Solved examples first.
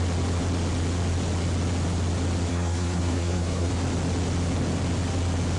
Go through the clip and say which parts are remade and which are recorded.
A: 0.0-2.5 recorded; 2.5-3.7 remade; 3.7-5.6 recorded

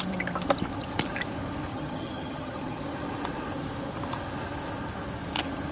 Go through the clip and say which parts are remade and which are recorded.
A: 0.0-1.7 recorded; 1.7-2.8 remade; 2.8-5.7 recorded

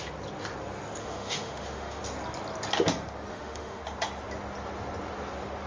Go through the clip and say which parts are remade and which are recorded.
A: 0.0-1.0 recorded; 1.0-2.0 remade; 2.0-3.3 recorded; 3.3-3.8 remade; 3.8-5.7 recorded

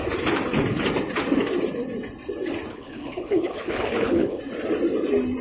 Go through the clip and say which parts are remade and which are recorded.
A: 0.0-2.7 recorded; 2.7-4.4 remade; 4.4-5.4 recorded

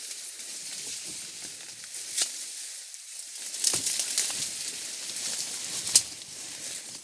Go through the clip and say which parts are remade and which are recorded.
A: 0.0-0.5 recorded; 0.5-4.7 remade; 4.7-7.0 recorded